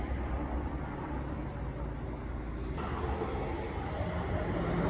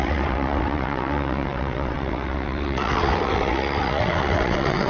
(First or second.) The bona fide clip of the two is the first